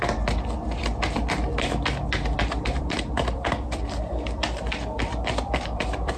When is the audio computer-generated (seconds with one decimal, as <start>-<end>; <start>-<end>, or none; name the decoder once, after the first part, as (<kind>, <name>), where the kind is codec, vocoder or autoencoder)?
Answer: 2.8-6.2 (vocoder, BigVGAN v2)